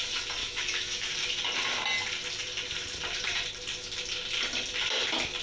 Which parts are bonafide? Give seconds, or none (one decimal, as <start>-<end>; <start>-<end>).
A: 0.0-0.4; 1.1-5.4